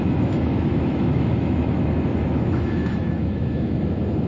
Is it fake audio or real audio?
fake